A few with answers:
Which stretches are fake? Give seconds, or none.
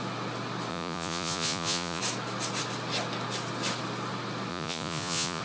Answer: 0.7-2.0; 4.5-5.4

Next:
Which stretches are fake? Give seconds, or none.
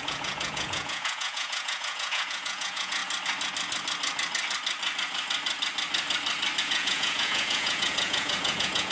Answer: 0.0-3.0; 6.6-8.9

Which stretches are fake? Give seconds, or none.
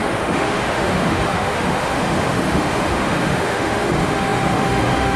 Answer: 0.0-5.2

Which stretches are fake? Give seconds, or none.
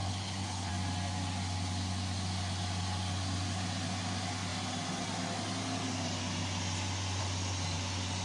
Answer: 0.0-0.7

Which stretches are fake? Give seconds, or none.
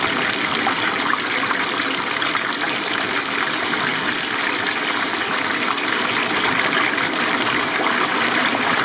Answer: 0.0-8.8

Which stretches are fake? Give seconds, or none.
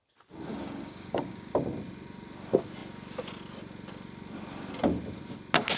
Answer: 0.5-1.5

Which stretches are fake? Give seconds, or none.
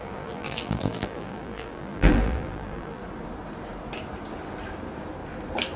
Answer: 0.0-3.0